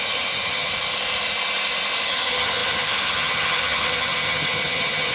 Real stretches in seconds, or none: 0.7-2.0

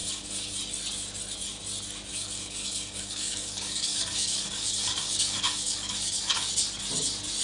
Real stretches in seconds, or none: 0.6-2.1; 6.5-7.4

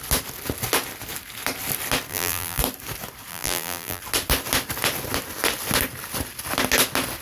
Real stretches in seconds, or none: 0.0-2.1; 2.6-3.3; 4.0-7.2

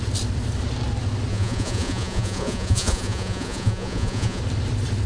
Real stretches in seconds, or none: 0.0-1.3; 4.4-5.1

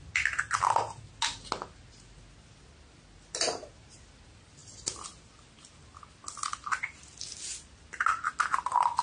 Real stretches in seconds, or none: 0.0-9.0

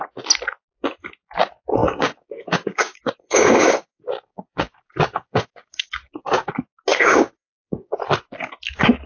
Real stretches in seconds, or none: 0.0-1.8; 6.5-6.9; 8.0-9.1

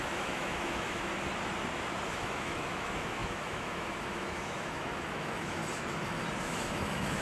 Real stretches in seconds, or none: 1.1-2.1; 5.6-6.4

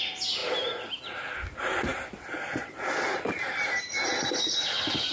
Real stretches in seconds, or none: 0.0-5.1